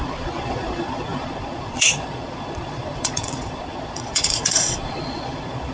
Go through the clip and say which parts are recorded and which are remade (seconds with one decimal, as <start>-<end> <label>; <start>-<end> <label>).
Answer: 0.0-5.7 remade